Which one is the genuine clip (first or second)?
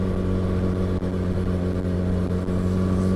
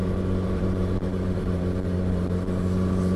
first